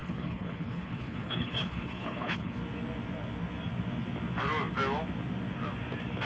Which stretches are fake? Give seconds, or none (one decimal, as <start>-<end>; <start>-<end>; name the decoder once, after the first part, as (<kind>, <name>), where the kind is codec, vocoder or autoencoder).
0.0-2.6 (codec, HILCodec)